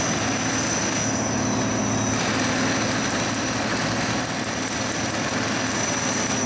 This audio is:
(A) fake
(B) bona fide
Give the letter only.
B